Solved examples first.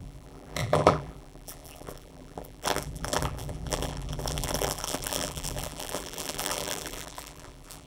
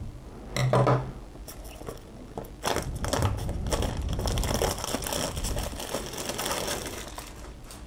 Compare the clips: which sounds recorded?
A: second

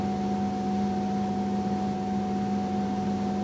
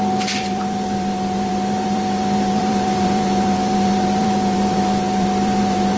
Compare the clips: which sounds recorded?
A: first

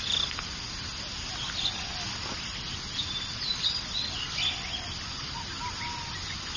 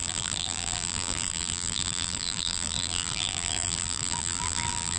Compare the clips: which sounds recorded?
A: first